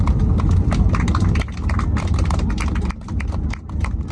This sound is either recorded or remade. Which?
recorded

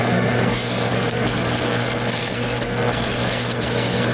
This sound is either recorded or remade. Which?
remade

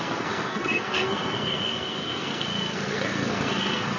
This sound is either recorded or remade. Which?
remade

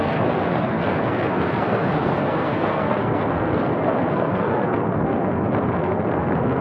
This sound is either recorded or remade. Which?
remade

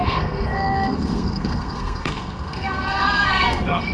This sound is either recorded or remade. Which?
remade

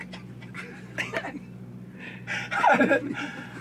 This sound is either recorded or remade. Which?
recorded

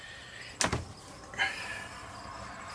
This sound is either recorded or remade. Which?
recorded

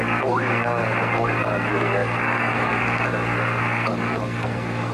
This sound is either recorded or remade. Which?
remade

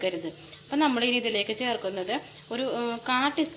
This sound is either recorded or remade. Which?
recorded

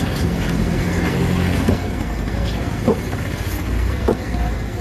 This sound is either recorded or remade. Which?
remade